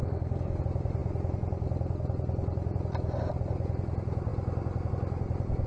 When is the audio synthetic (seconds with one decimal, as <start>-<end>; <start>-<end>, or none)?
0.0-0.6